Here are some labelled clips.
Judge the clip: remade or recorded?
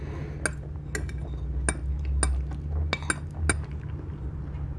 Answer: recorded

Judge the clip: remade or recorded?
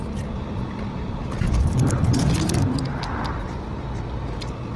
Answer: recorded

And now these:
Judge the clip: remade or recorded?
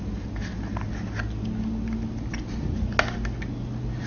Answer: recorded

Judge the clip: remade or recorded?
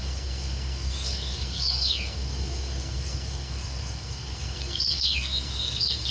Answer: remade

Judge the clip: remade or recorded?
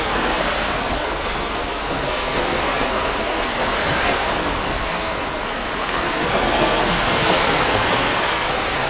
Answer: remade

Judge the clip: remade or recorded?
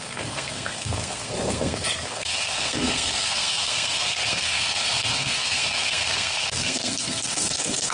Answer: remade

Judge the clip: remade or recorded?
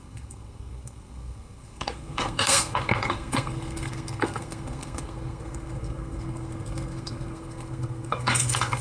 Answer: remade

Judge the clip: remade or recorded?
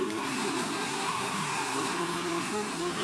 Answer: remade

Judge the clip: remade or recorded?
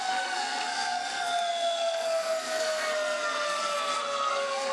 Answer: remade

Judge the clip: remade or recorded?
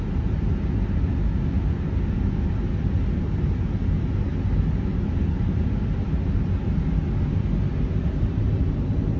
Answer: recorded